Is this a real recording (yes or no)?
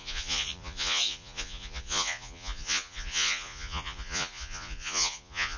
no